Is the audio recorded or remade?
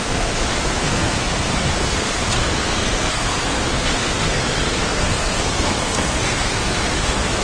remade